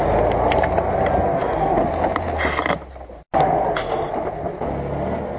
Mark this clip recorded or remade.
recorded